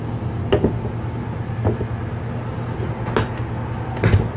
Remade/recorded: recorded